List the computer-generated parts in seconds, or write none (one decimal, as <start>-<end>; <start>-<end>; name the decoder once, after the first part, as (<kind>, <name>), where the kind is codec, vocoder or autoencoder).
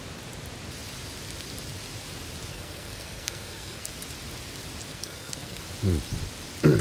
2.5-3.9 (codec, SNAC); 4.9-5.6